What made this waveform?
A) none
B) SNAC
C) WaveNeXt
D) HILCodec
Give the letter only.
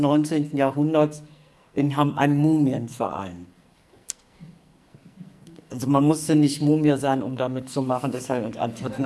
B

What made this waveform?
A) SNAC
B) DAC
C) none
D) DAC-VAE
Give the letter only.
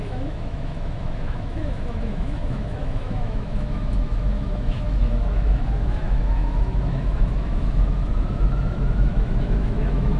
D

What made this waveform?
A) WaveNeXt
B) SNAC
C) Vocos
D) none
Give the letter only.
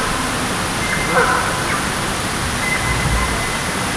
D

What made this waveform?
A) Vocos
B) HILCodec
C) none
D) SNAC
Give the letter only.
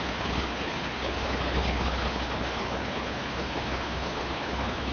B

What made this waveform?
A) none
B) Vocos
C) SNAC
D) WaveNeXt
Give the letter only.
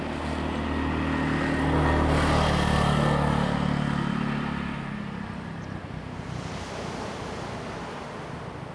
A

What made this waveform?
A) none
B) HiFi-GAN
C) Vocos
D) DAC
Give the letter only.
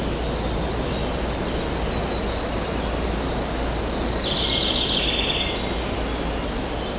A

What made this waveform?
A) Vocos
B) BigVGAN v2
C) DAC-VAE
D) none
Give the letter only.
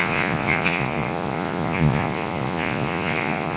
A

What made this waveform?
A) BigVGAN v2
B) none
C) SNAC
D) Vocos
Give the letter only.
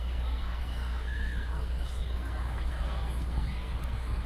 C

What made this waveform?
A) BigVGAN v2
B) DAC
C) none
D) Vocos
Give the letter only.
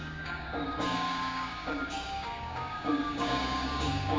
B